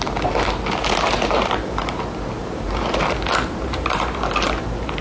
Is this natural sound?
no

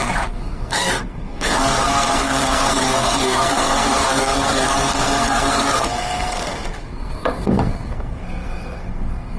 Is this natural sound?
no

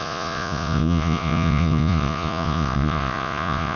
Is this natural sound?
no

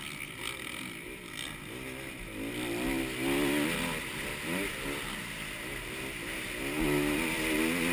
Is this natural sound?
yes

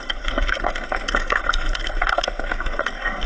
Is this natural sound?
no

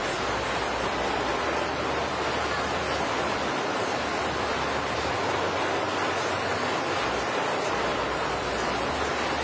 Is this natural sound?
yes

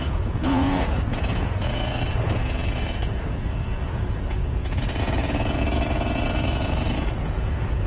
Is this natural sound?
no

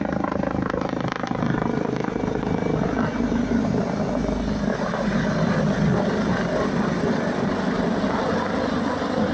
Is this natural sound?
yes